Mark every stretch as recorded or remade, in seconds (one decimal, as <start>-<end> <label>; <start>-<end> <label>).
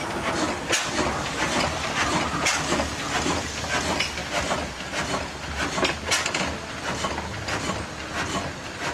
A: 0.0-8.9 recorded